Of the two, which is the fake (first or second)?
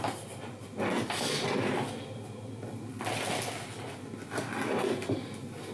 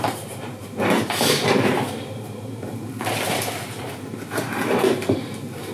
second